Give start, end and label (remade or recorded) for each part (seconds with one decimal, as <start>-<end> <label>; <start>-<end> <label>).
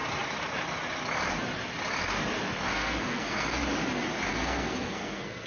0.0-2.7 recorded; 2.7-3.6 remade; 3.6-4.3 recorded; 4.3-5.5 remade